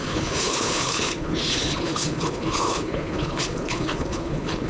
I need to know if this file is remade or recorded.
remade